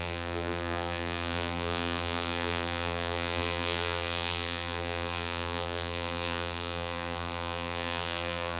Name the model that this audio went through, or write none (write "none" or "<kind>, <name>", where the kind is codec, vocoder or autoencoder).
vocoder, BigVGAN v2